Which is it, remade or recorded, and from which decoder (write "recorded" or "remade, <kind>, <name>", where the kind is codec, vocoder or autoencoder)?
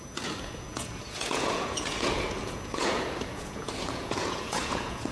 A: remade, vocoder, Vocos